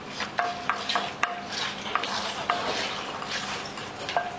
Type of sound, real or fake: real